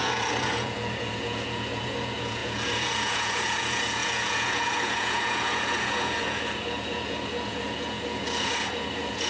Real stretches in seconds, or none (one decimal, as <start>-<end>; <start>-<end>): none